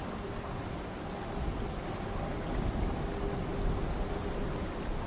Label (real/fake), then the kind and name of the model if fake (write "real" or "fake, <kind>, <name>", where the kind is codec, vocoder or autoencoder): real